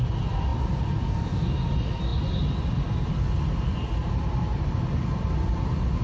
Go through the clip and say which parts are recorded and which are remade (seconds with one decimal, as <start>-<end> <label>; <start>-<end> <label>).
0.0-6.0 recorded

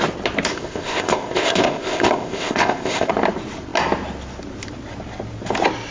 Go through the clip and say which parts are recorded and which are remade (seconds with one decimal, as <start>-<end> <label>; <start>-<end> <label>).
0.0-0.5 recorded; 0.5-3.1 remade; 3.1-5.9 recorded

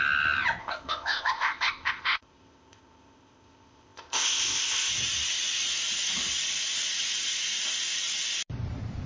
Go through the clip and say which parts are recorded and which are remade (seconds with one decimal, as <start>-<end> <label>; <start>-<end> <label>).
0.0-0.6 recorded; 0.6-4.9 remade; 4.9-9.1 recorded

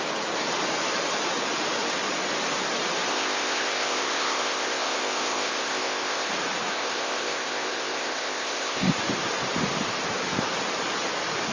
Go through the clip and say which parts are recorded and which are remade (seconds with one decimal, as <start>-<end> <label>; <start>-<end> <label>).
0.0-3.1 recorded; 3.1-6.3 remade; 6.3-6.7 recorded; 6.7-8.9 remade; 8.9-11.5 recorded

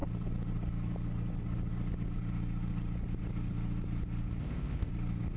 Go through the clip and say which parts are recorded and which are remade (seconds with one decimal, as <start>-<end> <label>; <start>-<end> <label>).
0.0-4.4 recorded; 4.4-4.9 remade; 4.9-5.4 recorded

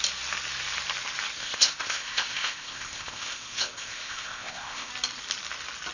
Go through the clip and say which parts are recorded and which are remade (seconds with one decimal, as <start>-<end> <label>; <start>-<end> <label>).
0.0-1.4 recorded; 1.4-4.9 remade; 4.9-5.9 recorded

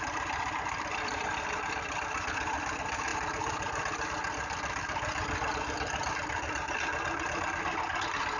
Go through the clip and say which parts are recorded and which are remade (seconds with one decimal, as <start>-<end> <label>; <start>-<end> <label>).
0.0-8.4 recorded

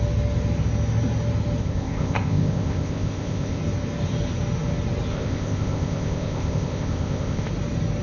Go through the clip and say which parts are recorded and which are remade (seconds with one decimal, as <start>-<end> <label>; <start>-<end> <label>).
0.0-1.6 recorded; 1.6-3.6 remade; 3.6-5.1 recorded; 5.1-7.5 remade; 7.5-8.0 recorded